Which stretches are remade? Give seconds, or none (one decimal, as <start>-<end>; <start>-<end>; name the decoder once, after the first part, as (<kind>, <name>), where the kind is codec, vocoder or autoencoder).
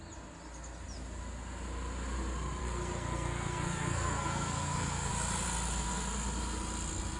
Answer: 2.6-5.1 (codec, SNAC)